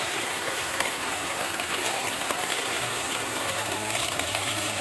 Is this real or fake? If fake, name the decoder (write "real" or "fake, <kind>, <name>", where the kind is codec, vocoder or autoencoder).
fake, codec, SNAC